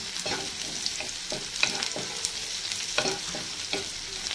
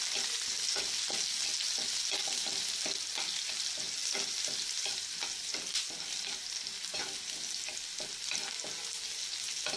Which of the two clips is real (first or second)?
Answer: second